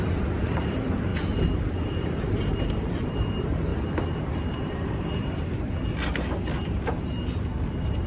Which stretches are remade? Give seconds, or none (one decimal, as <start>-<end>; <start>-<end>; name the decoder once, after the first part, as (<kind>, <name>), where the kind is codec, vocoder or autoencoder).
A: 0.0-1.1 (vocoder, BigVGAN v2); 1.9-3.7; 4.2-5.1